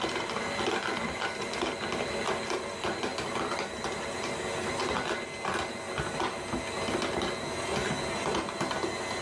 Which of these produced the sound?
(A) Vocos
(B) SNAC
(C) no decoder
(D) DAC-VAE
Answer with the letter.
C